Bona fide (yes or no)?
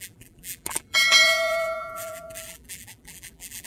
no